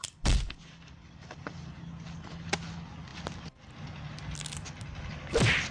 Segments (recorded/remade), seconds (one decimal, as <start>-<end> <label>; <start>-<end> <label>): 0.0-1.8 remade; 1.8-5.7 recorded